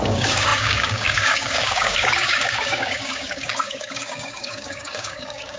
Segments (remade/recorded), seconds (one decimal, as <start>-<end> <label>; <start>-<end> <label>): 0.0-5.6 remade